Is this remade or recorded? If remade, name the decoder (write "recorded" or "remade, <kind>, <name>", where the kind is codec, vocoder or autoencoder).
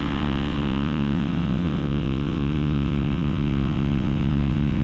remade, vocoder, WaveNeXt